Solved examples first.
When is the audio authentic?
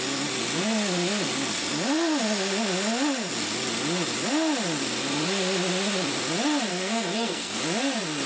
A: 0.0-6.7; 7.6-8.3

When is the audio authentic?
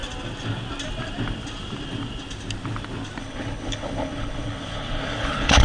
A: 0.0-3.2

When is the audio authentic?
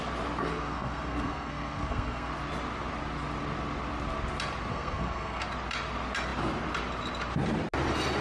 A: 0.0-0.4; 2.3-4.7; 5.4-8.2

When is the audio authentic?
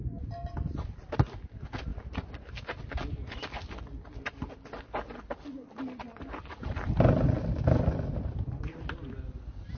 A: 0.0-9.8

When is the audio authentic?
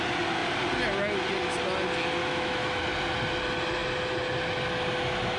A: 0.0-2.2; 2.8-5.4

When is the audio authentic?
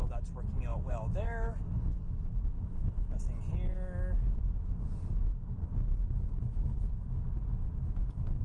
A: 0.0-0.7; 1.6-8.4